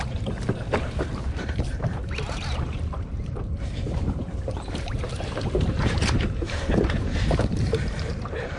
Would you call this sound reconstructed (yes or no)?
yes